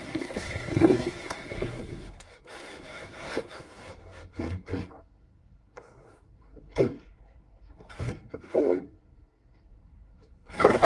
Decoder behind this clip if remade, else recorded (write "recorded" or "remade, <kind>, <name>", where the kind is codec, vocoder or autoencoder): remade, codec, SNAC